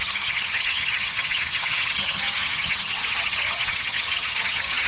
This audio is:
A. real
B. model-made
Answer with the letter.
B